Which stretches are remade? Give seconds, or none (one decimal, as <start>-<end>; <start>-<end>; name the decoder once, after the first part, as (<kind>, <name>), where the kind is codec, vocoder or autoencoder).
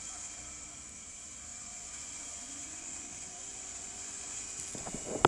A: 1.5-4.4 (vocoder, Vocos)